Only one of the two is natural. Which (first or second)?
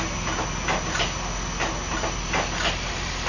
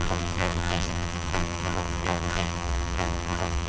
first